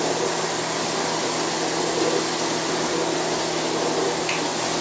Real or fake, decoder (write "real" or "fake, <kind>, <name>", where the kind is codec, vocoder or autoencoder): real